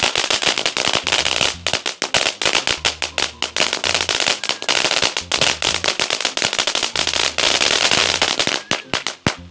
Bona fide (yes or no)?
yes